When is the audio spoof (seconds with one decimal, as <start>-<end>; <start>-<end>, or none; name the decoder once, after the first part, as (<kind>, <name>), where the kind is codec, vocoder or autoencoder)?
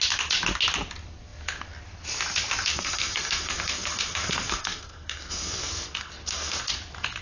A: 2.7-6.8 (codec, SNAC)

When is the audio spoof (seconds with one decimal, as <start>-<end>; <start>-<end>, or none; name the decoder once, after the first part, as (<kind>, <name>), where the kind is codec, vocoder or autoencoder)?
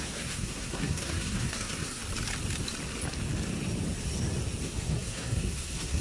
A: 0.0-2.0 (codec, SNAC); 4.6-6.0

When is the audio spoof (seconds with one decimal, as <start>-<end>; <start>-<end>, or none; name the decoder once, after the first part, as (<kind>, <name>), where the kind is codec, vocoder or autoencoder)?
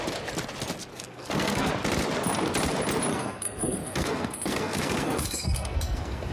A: 0.9-1.7 (codec, SNAC); 3.1-6.3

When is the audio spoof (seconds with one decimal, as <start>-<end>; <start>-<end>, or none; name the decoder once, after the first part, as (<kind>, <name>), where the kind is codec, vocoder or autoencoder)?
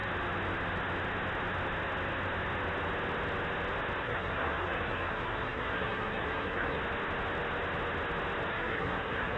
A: 4.0-6.8 (codec, SNAC); 8.5-9.4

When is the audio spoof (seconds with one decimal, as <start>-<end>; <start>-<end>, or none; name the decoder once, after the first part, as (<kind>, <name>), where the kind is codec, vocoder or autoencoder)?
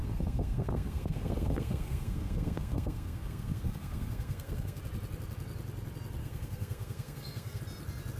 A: 0.0-4.8 (codec, SNAC); 6.2-7.6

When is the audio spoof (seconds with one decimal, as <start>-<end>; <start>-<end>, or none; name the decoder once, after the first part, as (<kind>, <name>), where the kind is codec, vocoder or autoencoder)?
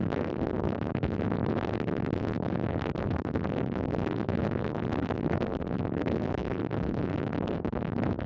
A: 0.0-8.3 (codec, SNAC)